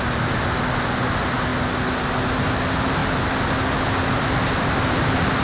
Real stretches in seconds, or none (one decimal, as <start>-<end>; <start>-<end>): 0.0-5.4

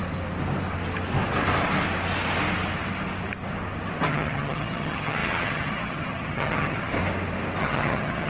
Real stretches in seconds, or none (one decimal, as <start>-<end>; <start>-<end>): 0.0-4.1; 6.9-7.6

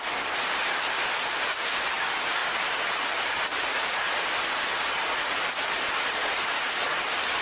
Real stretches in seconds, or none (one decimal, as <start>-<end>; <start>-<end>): 0.0-7.4